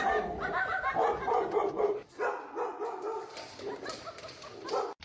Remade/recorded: recorded